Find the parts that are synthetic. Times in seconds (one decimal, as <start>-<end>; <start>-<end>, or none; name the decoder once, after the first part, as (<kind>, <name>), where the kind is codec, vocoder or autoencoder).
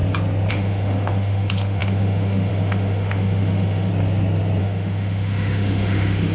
0.5-3.9 (autoencoder, DAC-VAE); 4.6-6.3